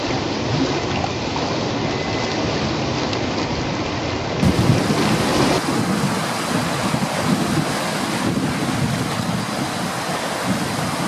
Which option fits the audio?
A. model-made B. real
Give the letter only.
B